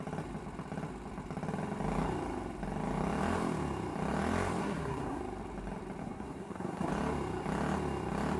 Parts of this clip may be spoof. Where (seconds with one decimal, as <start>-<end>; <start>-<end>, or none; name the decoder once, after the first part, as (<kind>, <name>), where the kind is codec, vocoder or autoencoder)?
4.6-5.2 (codec, SNAC); 6.0-6.9